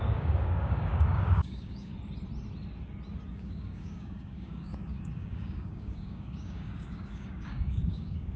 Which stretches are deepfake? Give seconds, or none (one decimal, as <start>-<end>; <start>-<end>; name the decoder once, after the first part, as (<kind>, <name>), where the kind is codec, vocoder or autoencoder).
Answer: 0.0-1.9 (codec, DAC); 3.3-8.4

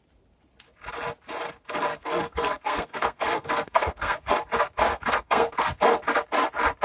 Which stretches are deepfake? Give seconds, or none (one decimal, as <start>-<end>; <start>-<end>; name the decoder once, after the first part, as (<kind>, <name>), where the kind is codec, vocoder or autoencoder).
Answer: 1.9-4.3 (codec, SNAC); 4.8-5.8

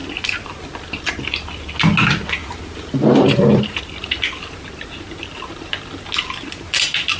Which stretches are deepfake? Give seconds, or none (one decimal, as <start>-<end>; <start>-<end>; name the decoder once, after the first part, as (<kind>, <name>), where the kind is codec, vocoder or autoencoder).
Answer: 2.4-3.8 (vocoder, BigVGAN v2)

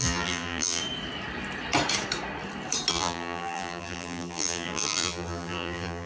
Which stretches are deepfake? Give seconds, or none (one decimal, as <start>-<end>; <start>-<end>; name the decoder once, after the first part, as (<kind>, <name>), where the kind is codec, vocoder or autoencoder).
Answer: 0.0-0.8 (vocoder, BigVGAN v2); 2.9-6.1

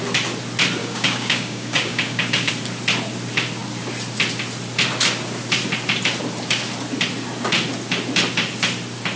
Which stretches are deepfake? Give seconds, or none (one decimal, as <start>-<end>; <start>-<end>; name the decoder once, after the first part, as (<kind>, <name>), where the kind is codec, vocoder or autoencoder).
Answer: 0.8-2.5 (codec, DAC)

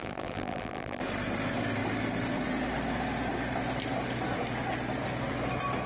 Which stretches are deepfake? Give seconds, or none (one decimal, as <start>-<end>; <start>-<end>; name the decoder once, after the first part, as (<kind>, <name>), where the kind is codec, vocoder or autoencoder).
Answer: 0.0-1.0 (vocoder, BigVGAN v2)

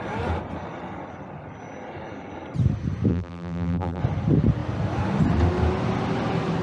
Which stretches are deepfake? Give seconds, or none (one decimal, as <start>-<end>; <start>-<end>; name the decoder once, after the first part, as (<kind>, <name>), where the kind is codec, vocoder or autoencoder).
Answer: 3.1-4.0 (vocoder, BigVGAN v2)

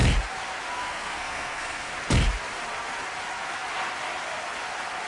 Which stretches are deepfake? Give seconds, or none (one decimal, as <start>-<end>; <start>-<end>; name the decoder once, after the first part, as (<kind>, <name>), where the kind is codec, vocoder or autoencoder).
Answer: 0.7-1.9 (codec, SNAC)